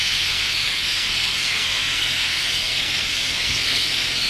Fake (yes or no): yes